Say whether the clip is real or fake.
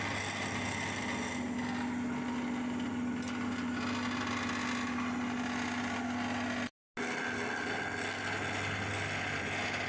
real